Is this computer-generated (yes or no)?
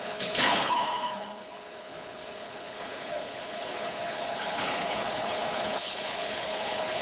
yes